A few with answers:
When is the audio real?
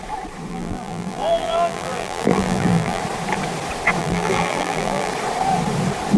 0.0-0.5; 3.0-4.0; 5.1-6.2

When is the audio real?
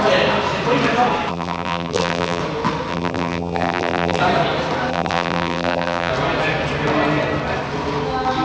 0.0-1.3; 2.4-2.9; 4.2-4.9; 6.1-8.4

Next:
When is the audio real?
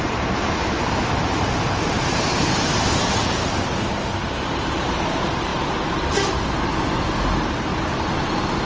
7.7-8.7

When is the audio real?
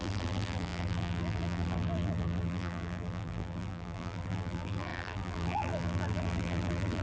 none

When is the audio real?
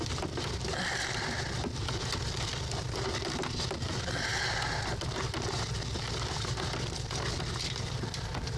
1.8-2.5; 4.3-4.8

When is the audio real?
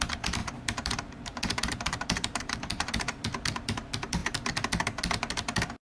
0.0-0.4; 3.0-5.9